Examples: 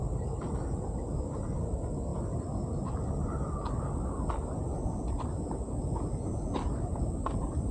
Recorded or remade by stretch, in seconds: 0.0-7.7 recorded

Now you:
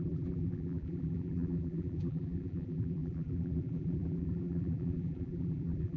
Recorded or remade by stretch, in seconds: 0.0-6.0 remade

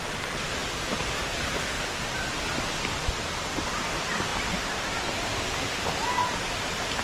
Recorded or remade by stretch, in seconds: 0.0-4.3 recorded; 4.3-5.2 remade; 5.2-6.2 recorded; 6.2-7.0 remade